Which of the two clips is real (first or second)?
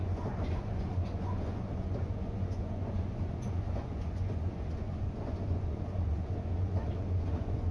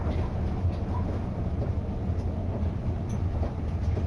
second